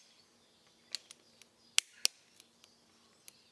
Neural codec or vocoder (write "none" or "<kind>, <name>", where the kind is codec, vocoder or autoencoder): none